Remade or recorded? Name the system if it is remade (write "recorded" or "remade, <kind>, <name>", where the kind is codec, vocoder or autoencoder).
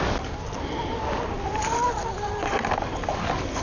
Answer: recorded